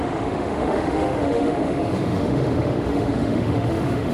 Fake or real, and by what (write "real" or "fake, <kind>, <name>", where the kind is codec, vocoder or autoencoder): fake, autoencoder, DAC-VAE